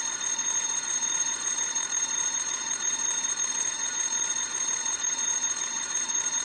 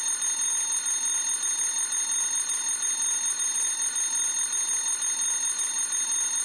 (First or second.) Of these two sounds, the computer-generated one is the first